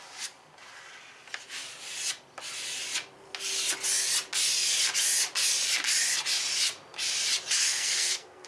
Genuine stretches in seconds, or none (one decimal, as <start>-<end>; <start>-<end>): 0.0-7.6